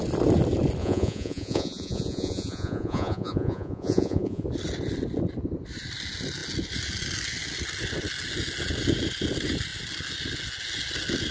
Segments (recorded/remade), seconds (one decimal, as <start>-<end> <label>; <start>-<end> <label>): 0.0-0.8 recorded; 0.8-4.4 remade; 4.4-11.3 recorded